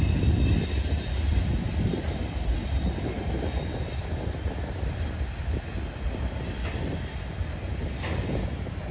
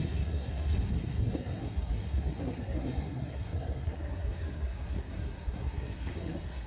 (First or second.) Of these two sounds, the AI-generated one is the second